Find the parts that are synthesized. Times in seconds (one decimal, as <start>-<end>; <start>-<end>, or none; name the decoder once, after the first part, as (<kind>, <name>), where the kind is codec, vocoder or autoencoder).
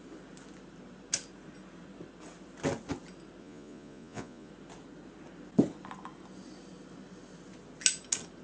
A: 3.4-4.5 (vocoder, Vocos)